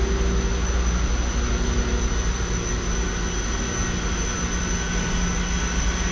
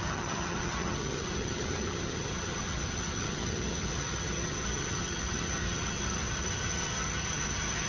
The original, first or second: first